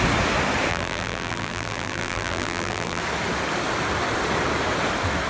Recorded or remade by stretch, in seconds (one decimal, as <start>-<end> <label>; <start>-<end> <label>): 0.0-0.7 recorded; 0.7-3.0 remade; 3.0-5.3 recorded